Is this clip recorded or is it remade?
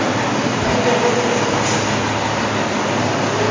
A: recorded